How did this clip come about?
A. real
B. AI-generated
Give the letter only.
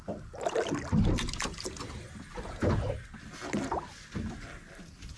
A